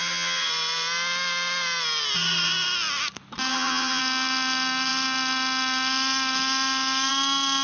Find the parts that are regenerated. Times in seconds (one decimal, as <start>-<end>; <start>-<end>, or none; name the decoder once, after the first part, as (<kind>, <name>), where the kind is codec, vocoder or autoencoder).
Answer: 0.0-0.5 (vocoder, HiFi-GAN); 3.5-4.0